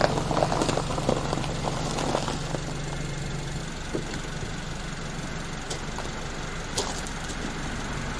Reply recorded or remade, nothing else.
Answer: recorded